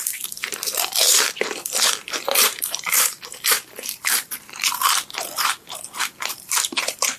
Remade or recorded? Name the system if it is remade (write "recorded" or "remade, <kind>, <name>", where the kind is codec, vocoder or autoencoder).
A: remade, vocoder, BigVGAN v2